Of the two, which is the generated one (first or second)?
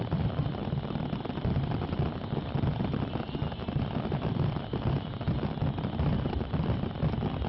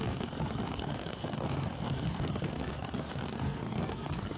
second